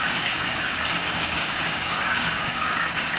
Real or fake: fake